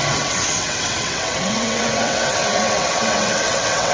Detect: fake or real fake